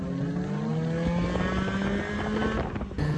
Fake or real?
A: real